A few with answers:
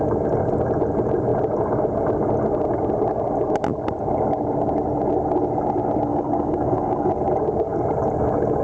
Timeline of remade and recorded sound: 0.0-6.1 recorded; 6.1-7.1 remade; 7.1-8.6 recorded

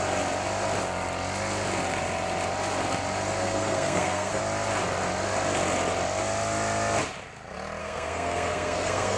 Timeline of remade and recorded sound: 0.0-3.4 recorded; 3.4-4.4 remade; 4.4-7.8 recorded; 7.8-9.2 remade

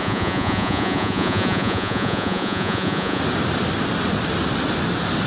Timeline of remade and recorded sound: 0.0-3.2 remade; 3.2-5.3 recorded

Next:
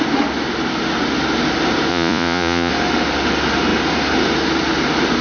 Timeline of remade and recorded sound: 0.0-1.9 recorded; 1.9-2.7 remade; 2.7-5.2 recorded